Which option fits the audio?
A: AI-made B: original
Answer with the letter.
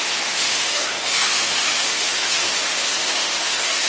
A